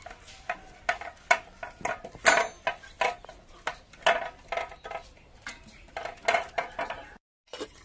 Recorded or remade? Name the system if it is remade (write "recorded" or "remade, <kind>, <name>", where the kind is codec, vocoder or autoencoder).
recorded